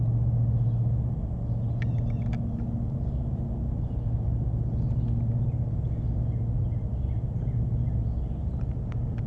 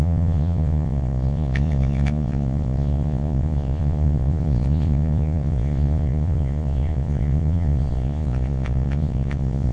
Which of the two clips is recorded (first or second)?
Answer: first